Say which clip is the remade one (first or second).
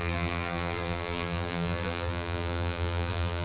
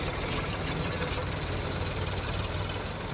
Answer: first